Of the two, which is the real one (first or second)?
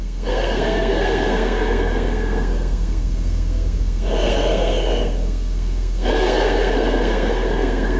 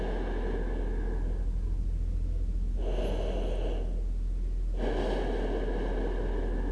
second